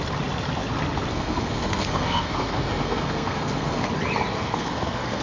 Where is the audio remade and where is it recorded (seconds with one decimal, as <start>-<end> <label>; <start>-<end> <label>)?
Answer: 0.0-1.1 recorded; 1.1-3.9 remade; 3.9-4.3 recorded; 4.3-5.2 remade